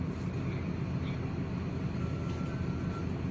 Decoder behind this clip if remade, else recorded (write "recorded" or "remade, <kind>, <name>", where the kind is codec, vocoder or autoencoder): recorded